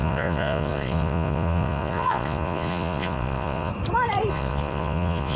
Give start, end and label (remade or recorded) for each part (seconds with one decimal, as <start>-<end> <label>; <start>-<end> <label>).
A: 0.0-3.7 remade; 3.7-4.3 recorded; 4.3-5.4 remade